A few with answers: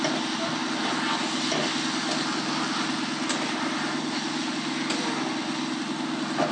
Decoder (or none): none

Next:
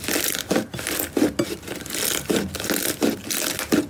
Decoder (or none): none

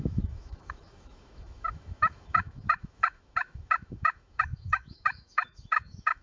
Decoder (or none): autoencoder, DAC-VAE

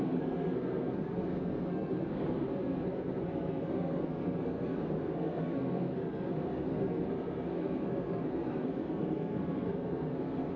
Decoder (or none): codec, SNAC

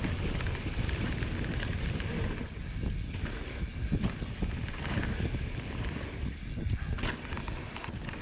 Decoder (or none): none